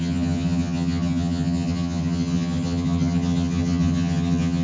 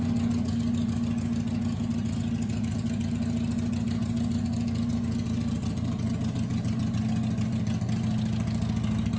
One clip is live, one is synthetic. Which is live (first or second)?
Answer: second